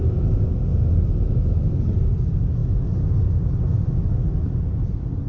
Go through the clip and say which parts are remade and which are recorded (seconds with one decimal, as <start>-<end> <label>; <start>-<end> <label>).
0.0-5.3 recorded